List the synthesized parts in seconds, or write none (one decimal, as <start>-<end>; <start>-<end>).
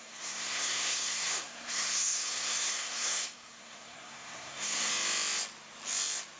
0.0-4.9